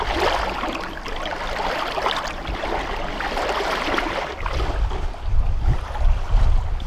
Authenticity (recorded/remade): recorded